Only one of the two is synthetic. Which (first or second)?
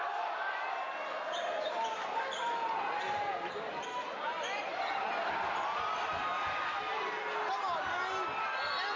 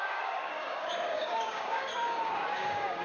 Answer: second